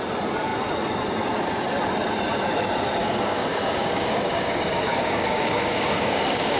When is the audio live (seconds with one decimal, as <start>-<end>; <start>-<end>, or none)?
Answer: 0.0-3.0